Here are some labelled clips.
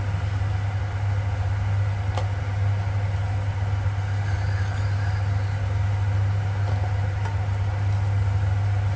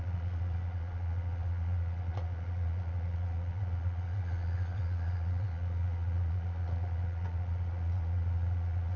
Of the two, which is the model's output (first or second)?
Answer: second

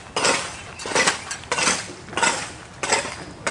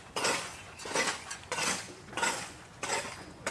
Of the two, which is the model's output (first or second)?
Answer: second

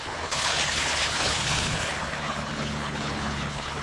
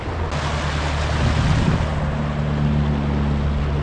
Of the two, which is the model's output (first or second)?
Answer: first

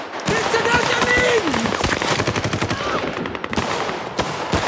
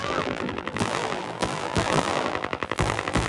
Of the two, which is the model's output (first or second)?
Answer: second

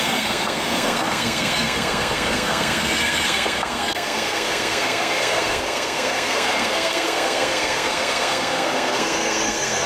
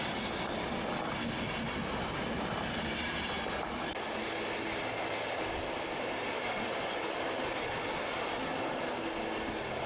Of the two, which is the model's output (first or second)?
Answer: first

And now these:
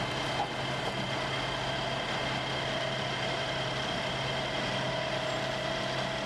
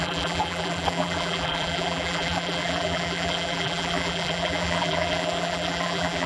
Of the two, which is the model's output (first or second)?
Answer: second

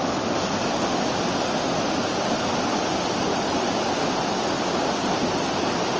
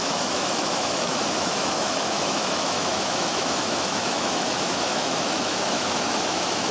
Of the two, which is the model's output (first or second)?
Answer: second